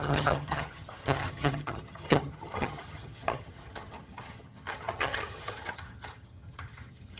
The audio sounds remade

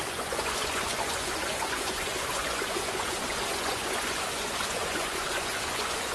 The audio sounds remade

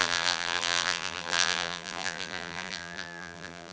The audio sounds remade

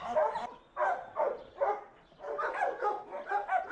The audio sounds recorded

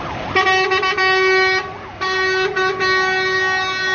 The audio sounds recorded